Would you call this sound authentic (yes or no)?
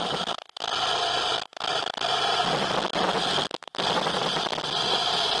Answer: yes